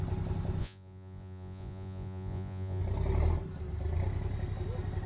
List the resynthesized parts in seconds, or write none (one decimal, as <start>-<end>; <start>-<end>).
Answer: 0.6-2.8